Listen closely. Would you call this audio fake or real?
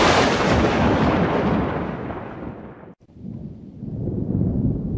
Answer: real